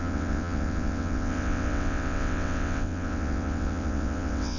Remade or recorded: remade